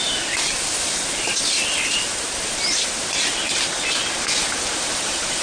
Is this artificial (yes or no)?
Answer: no